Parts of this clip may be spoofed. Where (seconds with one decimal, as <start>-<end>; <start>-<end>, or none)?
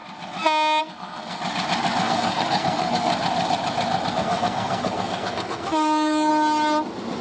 0.8-1.4; 2.0-3.1; 4.1-6.3